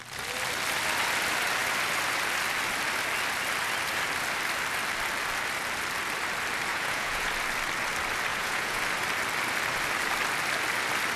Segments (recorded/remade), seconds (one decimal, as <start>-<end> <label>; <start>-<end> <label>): 0.0-6.7 recorded; 6.7-7.3 remade; 7.3-8.3 recorded; 8.3-8.8 remade; 8.8-11.2 recorded